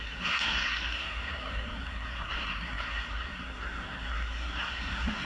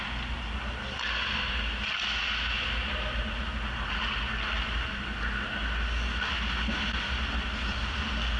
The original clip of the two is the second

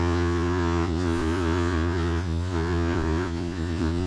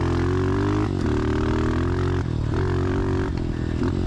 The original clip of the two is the second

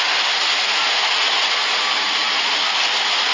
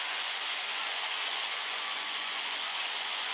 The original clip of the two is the first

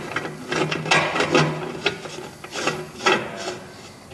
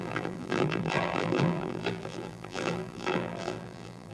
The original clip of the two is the first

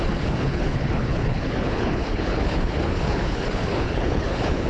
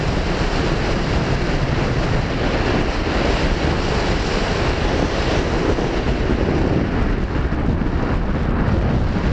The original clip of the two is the second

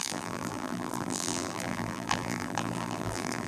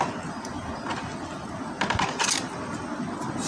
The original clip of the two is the second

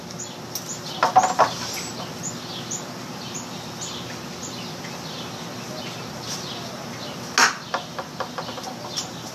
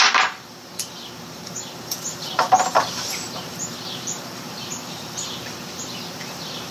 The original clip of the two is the first